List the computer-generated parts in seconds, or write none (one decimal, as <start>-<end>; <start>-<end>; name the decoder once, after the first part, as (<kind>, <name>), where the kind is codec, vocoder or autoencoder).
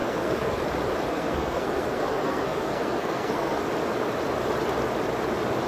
0.0-0.6 (codec, SNAC); 1.1-3.6